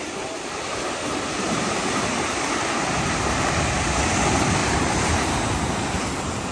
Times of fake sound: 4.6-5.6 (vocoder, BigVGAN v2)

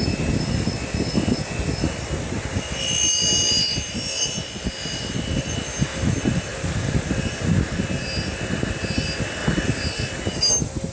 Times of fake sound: none

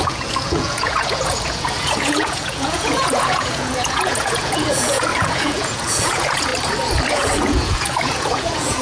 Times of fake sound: 0.0-6.5 (vocoder, Vocos); 7.1-8.8